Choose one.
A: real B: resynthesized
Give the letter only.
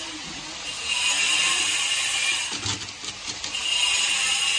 A